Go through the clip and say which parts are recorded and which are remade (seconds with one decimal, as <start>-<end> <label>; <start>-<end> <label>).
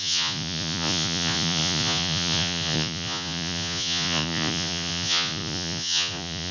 0.0-6.5 remade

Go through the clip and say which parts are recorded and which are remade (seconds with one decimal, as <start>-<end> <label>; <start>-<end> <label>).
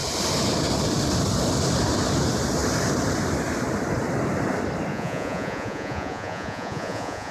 0.0-4.9 recorded; 4.9-7.3 remade